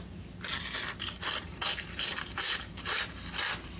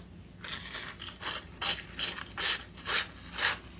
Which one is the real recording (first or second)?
second